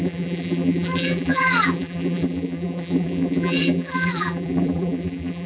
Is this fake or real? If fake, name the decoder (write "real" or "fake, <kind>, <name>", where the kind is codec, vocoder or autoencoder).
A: fake, vocoder, BigVGAN v2